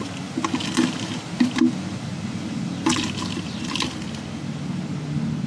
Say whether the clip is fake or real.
real